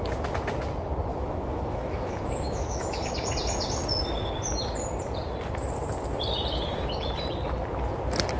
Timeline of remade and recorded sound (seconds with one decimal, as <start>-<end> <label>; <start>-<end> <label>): 0.0-1.1 recorded; 1.1-3.1 remade; 3.1-8.4 recorded

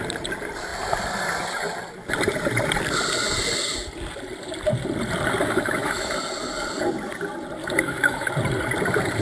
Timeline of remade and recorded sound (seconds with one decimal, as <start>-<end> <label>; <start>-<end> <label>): 0.0-5.4 recorded; 5.4-6.1 remade; 6.1-7.6 recorded; 7.6-8.3 remade; 8.3-9.2 recorded

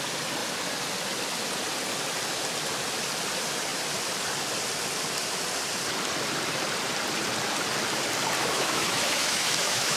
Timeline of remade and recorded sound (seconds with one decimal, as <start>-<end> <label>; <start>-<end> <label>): 0.0-8.4 recorded; 8.4-10.0 remade

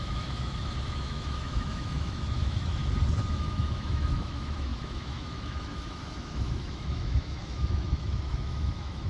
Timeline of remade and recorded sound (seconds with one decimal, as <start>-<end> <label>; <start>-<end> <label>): 0.0-2.8 remade; 2.8-3.3 recorded; 3.3-9.1 remade

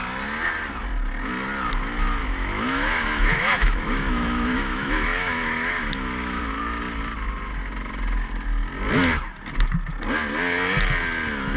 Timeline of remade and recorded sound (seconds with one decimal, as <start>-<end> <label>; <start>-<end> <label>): 0.0-2.2 recorded; 2.2-6.4 remade; 6.4-11.6 recorded

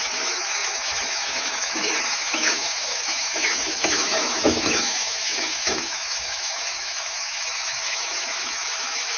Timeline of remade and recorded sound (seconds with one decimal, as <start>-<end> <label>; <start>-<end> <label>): 0.0-9.2 remade

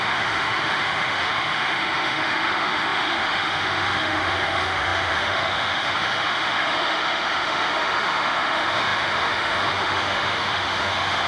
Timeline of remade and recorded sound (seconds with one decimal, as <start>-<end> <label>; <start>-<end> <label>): 0.0-11.3 remade

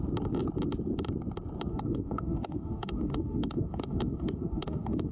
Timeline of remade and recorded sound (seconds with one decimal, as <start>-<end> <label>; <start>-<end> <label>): 0.0-1.7 recorded; 1.7-5.1 remade